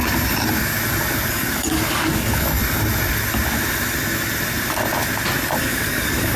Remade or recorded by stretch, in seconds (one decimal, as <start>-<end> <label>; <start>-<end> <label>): 0.0-1.3 recorded; 1.3-2.6 remade; 2.6-5.6 recorded; 5.6-6.4 remade